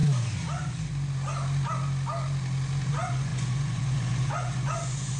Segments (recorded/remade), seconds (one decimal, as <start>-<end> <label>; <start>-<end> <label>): 0.0-2.9 recorded; 2.9-5.2 remade

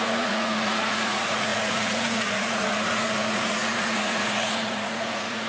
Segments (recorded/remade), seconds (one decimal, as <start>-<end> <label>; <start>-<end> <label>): 0.0-5.5 remade

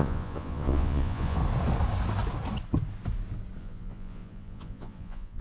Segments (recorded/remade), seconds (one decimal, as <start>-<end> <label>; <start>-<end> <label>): 0.0-1.4 remade; 1.4-3.6 recorded; 3.6-5.4 remade

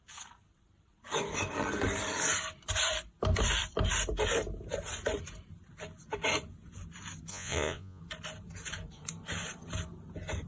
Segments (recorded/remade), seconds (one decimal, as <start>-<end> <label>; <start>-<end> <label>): 0.0-7.3 recorded; 7.3-8.0 remade; 8.0-10.5 recorded

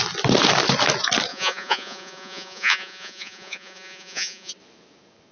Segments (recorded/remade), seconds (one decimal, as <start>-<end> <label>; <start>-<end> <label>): 0.0-1.3 recorded; 1.3-4.5 remade; 4.5-5.3 recorded

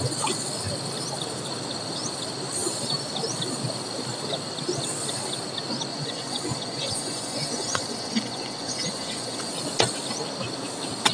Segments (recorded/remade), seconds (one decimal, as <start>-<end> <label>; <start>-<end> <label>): 0.0-5.9 recorded; 5.9-9.5 remade; 9.5-11.1 recorded

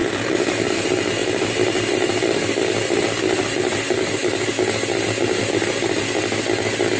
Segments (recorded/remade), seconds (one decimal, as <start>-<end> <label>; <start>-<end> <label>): 0.0-7.0 recorded